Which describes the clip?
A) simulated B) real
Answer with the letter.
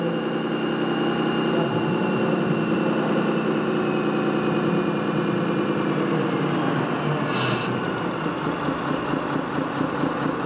B